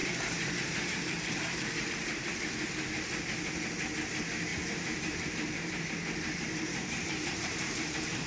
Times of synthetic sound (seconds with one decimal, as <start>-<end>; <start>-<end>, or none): 0.0-1.9; 4.5-8.3